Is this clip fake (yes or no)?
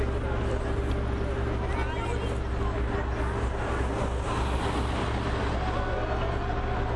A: no